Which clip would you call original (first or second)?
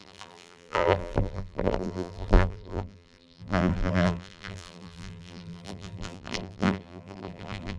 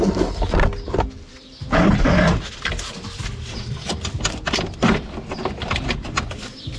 second